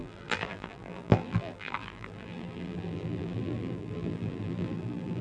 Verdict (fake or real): fake